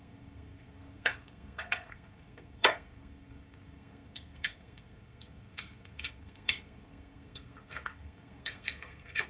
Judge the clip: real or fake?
fake